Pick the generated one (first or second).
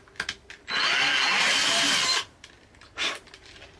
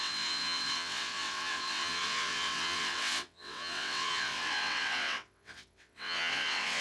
second